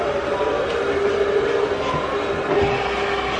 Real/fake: real